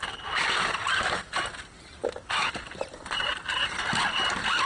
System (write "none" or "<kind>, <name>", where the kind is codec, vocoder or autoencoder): none